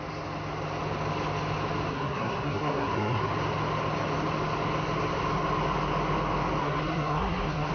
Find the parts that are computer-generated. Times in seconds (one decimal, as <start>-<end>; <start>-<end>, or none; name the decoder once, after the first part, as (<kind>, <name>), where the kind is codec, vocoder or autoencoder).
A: 1.9-3.3 (codec, SNAC); 6.6-7.7